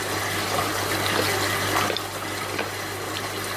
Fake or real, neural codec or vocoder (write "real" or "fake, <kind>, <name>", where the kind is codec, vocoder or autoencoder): real